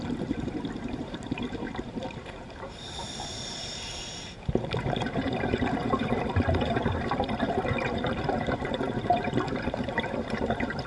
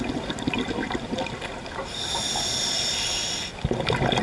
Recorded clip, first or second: second